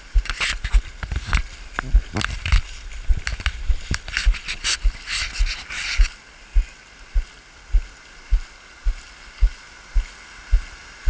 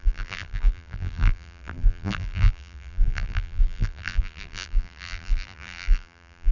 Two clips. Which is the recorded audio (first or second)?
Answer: first